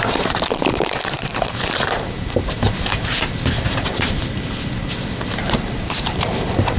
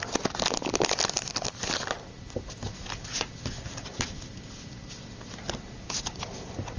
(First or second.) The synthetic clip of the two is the first